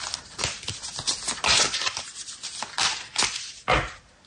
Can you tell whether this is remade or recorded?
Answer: recorded